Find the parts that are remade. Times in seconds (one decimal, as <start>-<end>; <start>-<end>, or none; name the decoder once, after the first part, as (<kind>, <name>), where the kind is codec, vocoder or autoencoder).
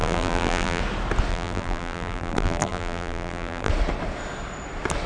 0.0-0.8 (vocoder, BigVGAN v2); 1.3-3.7